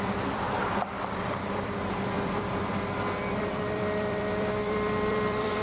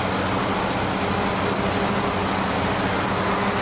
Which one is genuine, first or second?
second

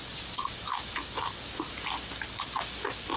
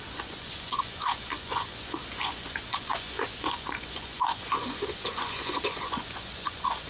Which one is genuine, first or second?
first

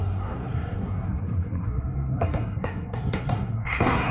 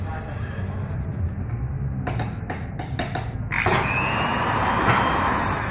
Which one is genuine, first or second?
second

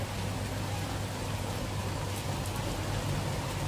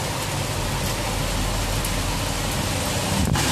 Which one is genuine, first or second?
second